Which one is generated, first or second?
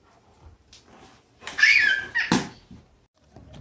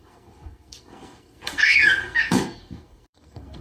second